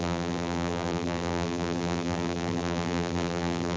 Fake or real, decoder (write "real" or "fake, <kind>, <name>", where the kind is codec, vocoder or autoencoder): fake, vocoder, BigVGAN v2